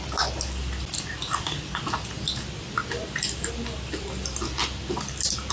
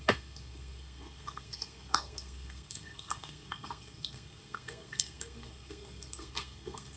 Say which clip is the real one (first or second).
first